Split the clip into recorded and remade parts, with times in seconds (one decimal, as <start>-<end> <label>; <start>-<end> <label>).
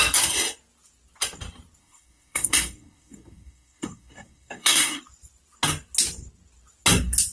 0.0-1.8 recorded; 1.8-5.0 remade; 5.0-7.3 recorded